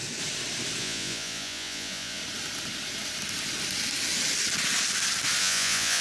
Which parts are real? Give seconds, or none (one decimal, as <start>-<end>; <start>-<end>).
0.0-0.8; 2.2-5.4

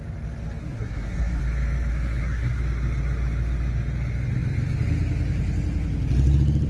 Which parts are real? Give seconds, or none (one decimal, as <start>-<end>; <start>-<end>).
0.0-0.6; 1.4-1.9; 2.6-6.7

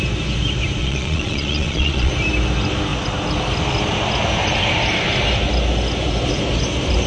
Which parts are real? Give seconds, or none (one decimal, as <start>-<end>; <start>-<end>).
0.0-0.8; 2.1-7.1

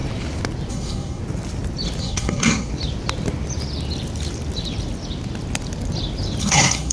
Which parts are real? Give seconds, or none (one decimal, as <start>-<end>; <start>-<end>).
0.0-0.7; 1.2-2.0; 2.7-6.4

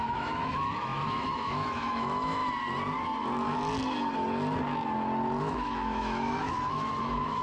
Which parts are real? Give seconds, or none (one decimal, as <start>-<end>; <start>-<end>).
2.4-5.4